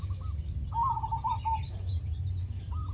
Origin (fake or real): real